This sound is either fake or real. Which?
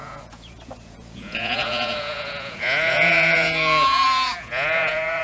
fake